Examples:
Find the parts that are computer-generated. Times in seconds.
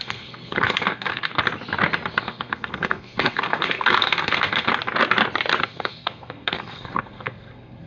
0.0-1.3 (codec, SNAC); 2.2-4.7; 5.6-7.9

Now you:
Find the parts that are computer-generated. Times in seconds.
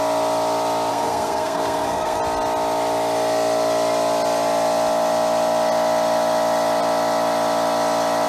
0.9-2.2 (codec, SNAC)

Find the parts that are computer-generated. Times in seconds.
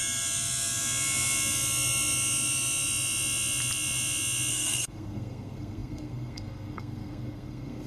4.5-7.9 (codec, SNAC)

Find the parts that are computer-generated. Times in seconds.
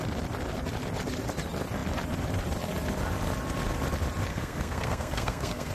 4.3-5.7 (codec, SNAC)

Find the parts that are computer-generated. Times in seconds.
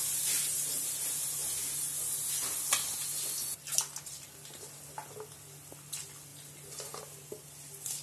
none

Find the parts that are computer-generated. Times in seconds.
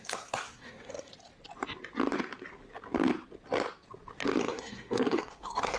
0.0-1.1 (codec, SNAC); 4.4-5.8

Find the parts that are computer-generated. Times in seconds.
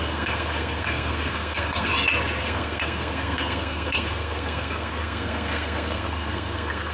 0.0-1.9 (codec, SNAC); 2.4-6.9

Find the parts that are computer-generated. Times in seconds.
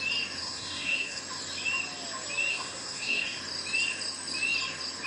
0.4-1.2 (codec, SNAC); 2.5-3.4